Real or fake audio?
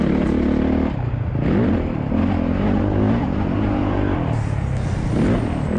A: real